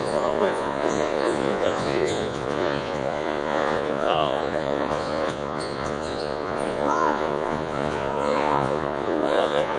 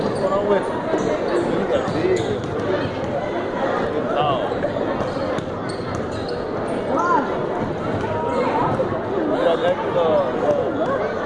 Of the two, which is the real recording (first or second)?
second